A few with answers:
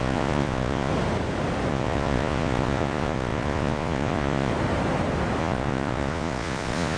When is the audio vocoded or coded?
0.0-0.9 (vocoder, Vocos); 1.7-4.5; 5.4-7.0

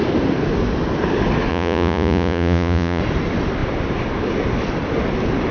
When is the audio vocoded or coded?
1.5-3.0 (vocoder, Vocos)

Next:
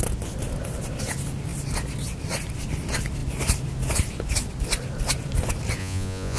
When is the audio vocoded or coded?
5.8-6.4 (vocoder, Vocos)